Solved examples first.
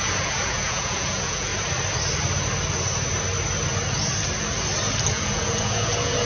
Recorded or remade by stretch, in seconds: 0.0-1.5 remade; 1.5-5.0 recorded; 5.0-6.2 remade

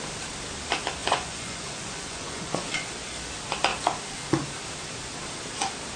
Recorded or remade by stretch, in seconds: 0.0-1.0 recorded; 1.0-2.9 remade; 2.9-6.0 recorded

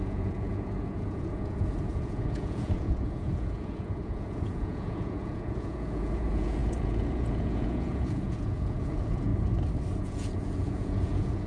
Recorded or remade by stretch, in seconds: 0.0-9.3 remade; 9.3-10.0 recorded; 10.0-11.5 remade

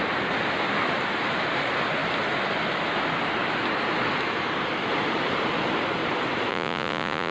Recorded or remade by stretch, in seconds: 0.0-6.5 recorded; 6.5-7.3 remade